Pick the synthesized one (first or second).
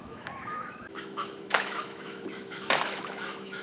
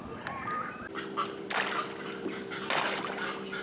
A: first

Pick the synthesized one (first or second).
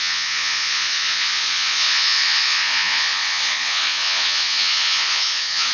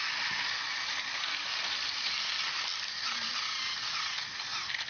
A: first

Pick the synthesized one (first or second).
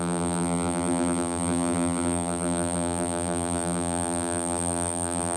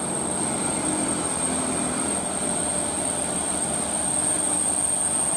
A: first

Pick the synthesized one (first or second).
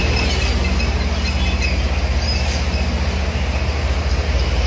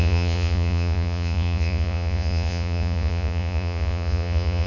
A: second